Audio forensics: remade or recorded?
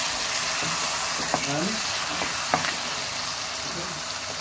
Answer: recorded